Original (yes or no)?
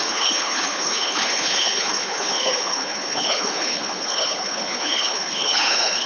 no